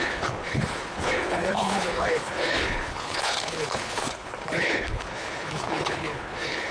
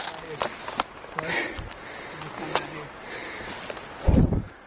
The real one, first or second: second